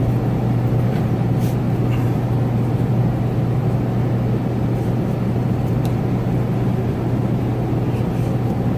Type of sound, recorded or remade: recorded